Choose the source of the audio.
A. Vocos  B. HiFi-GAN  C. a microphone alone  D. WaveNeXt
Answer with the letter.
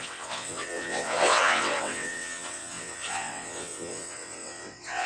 D